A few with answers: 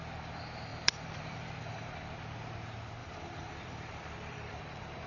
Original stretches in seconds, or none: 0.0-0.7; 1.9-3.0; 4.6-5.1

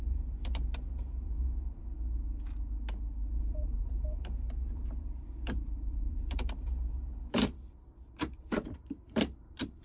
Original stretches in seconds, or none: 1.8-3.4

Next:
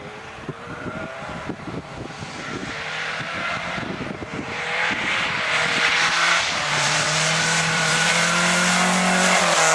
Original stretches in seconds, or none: 0.0-4.3; 8.1-9.7